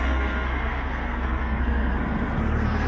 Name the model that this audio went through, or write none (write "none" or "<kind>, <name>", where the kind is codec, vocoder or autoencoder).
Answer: codec, SNAC